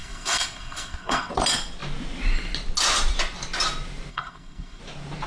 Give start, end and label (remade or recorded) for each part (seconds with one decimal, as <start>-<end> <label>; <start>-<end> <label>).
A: 0.0-1.3 remade; 1.3-4.1 recorded; 4.1-4.8 remade; 4.8-5.3 recorded